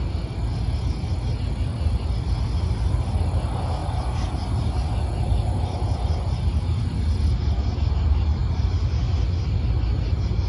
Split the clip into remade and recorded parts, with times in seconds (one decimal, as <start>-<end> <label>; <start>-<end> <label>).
0.0-10.5 recorded